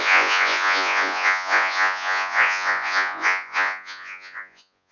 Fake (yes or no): yes